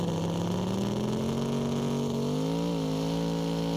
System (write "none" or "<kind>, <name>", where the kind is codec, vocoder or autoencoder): none